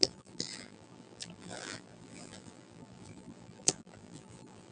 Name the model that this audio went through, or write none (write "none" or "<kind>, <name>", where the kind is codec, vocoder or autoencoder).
vocoder, BigVGAN v2